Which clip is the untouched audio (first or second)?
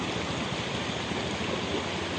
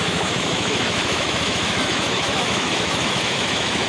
first